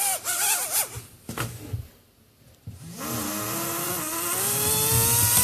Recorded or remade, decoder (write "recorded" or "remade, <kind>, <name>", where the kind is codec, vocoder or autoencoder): recorded